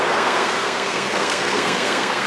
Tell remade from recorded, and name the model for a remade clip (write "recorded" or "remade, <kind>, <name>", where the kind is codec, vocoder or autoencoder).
remade, codec, SNAC